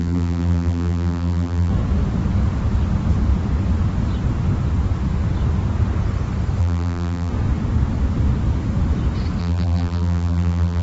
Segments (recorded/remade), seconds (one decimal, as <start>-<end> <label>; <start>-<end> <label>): 0.0-1.7 remade; 1.7-6.6 recorded; 6.6-7.3 remade; 7.3-9.4 recorded; 9.4-10.8 remade